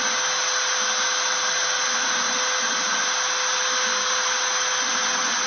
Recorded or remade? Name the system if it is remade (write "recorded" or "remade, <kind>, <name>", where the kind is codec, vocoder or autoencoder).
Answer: recorded